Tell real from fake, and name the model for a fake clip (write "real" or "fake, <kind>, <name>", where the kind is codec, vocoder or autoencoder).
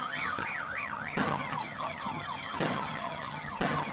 fake, vocoder, HiFi-GAN